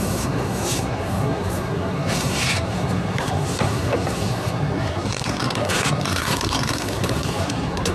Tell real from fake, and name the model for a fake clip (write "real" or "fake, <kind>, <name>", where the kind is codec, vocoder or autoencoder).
fake, codec, SNAC